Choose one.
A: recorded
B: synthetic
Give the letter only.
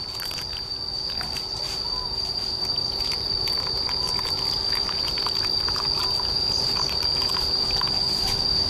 B